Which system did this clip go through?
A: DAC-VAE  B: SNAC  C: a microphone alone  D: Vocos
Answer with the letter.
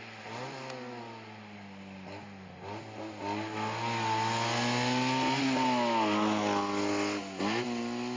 C